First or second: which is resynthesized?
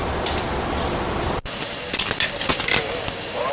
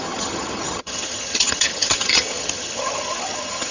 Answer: second